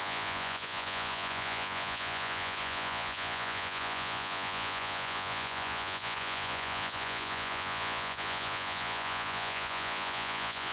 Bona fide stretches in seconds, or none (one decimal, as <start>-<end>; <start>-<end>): none